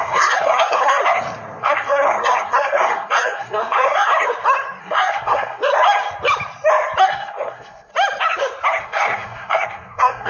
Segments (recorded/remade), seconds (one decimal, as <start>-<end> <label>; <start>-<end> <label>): 0.0-1.0 remade; 1.0-1.6 recorded; 1.6-4.1 remade; 4.1-4.8 recorded; 4.8-5.6 remade; 5.6-7.0 recorded; 7.0-7.9 remade; 7.9-8.8 recorded; 8.8-10.3 remade